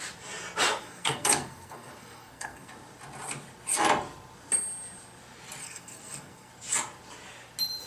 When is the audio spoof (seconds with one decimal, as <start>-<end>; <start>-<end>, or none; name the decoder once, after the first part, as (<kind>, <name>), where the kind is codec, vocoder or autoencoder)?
0.8-2.7 (codec, SNAC); 5.6-6.5